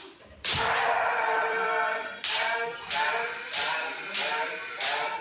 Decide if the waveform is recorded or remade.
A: remade